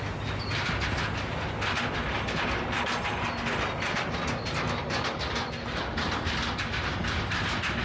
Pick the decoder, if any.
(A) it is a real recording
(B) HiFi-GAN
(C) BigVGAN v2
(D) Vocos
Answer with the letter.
A